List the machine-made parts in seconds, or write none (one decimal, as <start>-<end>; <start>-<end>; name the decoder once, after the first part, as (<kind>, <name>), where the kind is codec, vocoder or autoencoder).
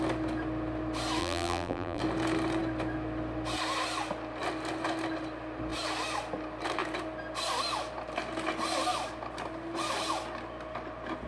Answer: 1.2-2.0 (vocoder, BigVGAN v2)